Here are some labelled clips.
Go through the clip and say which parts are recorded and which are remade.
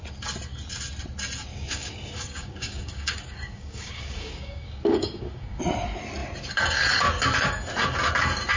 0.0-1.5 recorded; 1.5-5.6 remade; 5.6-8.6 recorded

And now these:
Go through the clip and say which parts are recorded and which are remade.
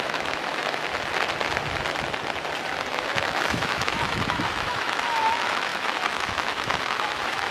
0.0-0.9 remade; 0.9-2.9 recorded; 2.9-7.5 remade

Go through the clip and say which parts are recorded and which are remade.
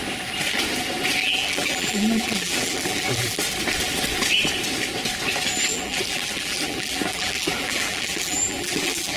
0.0-1.2 recorded; 1.2-3.4 remade; 3.4-5.7 recorded; 5.7-9.2 remade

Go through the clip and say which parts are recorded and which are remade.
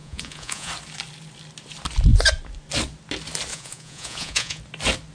0.0-0.7 remade; 0.7-3.5 recorded; 3.5-4.6 remade; 4.6-5.1 recorded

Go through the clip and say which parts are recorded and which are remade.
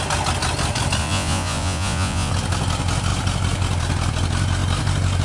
0.0-1.0 recorded; 1.0-2.3 remade; 2.3-5.2 recorded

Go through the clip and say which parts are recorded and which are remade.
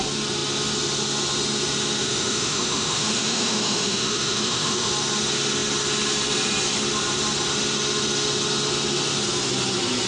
0.0-2.0 recorded; 2.0-4.9 remade; 4.9-10.1 recorded